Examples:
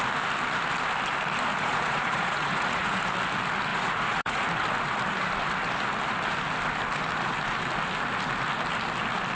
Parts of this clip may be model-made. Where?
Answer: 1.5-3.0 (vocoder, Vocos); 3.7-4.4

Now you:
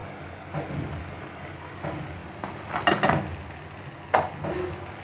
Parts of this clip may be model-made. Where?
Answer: 0.0-0.5 (codec, DAC); 1.0-1.8

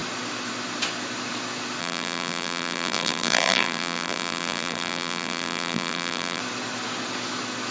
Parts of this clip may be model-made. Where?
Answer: 1.8-6.4 (vocoder, BigVGAN v2)

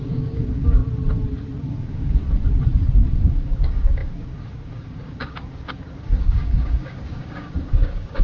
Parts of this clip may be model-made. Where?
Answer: 0.0-0.8 (codec, DAC); 1.7-2.2; 3.4-8.2